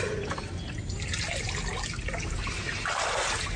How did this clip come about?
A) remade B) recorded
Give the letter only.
B